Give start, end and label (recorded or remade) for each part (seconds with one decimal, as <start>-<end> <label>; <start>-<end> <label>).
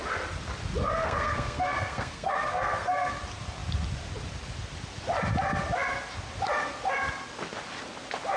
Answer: 0.0-0.8 recorded; 0.8-3.1 remade; 3.1-8.4 recorded